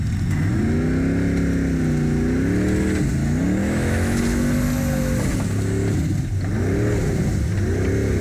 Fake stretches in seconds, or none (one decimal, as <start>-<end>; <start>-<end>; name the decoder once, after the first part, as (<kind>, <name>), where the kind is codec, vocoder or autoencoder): 3.6-4.2 (autoencoder, DAC-VAE)